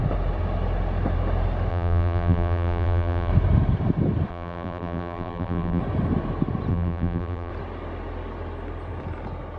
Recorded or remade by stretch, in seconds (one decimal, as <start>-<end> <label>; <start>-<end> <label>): 0.0-1.7 recorded; 1.7-3.3 remade; 3.3-4.3 recorded; 4.3-5.8 remade; 5.8-6.7 recorded; 6.7-7.5 remade; 7.5-9.6 recorded